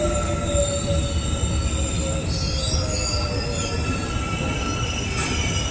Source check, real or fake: real